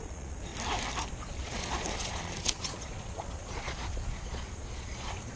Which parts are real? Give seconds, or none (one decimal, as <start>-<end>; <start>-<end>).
0.5-1.1

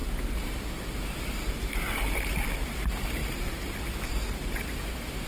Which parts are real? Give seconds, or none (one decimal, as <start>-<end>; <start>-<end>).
0.0-5.3

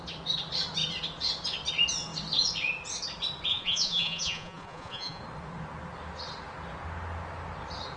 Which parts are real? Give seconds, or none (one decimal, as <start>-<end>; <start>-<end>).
0.0-3.5; 5.2-8.0

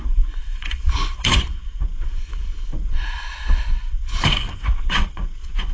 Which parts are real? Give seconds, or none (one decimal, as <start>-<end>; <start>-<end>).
none

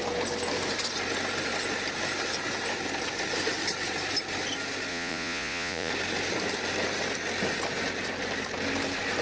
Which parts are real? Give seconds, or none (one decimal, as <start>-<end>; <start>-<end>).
0.0-4.9; 5.9-9.2

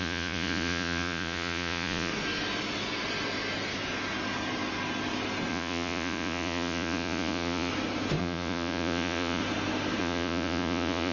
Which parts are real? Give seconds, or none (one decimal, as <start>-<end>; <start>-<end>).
2.1-5.5; 7.7-8.2; 9.4-10.0